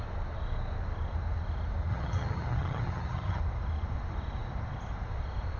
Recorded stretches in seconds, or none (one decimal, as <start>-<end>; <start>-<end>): 0.0-1.9; 3.4-5.6